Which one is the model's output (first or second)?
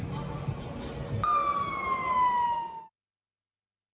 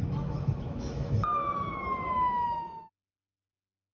second